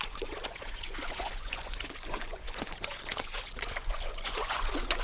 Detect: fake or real fake